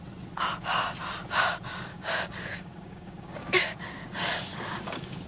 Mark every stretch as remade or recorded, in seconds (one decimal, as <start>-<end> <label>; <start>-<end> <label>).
0.0-1.9 recorded; 1.9-5.3 remade